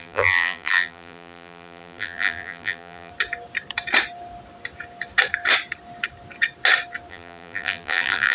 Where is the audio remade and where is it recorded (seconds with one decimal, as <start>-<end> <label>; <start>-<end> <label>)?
0.0-3.1 remade; 3.1-7.1 recorded; 7.1-8.3 remade